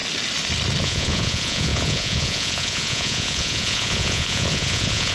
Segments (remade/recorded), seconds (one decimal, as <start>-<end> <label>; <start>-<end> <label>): 0.0-0.8 recorded; 0.8-5.1 remade